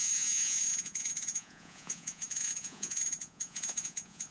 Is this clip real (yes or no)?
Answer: no